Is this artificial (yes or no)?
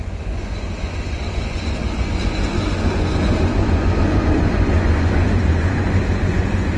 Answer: yes